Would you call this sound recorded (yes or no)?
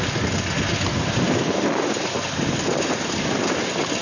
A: yes